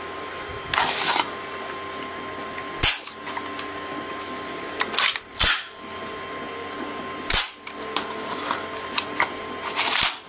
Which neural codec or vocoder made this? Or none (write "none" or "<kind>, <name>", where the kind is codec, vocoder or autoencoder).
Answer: none